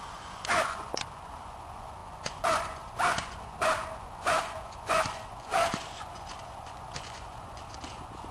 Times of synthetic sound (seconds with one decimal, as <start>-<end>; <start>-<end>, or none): 0.0-8.3